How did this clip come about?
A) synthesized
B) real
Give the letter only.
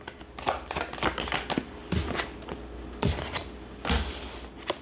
B